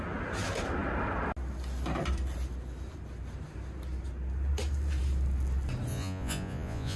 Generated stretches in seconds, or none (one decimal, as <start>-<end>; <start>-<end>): 5.9-7.0